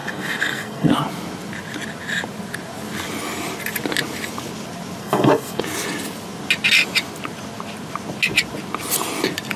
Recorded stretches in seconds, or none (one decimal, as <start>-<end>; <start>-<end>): 0.9-5.0; 5.6-9.6